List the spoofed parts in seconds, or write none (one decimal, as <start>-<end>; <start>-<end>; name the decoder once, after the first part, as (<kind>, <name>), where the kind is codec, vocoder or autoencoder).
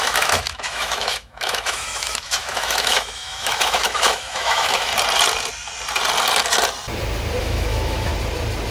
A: 0.0-4.9 (autoencoder, DAC-VAE); 7.4-8.1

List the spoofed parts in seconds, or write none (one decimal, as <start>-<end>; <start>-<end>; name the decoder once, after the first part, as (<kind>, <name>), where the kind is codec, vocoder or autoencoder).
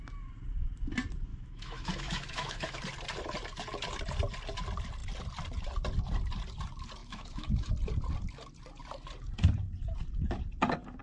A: 1.3-2.8 (autoencoder, DAC-VAE); 7.0-7.7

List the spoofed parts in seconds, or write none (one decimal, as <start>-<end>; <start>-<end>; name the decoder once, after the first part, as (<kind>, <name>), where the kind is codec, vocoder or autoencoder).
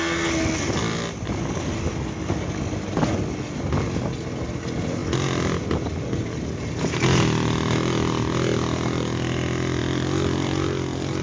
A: none